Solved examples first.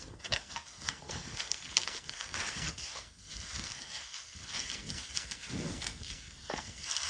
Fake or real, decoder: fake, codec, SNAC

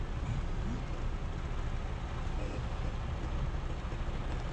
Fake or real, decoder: real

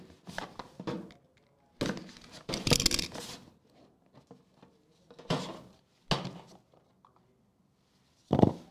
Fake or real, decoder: real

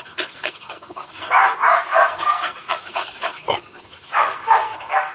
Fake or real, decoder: fake, codec, SNAC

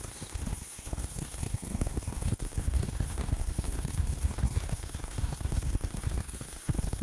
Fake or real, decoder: fake, codec, SNAC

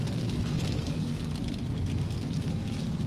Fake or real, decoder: fake, codec, SNAC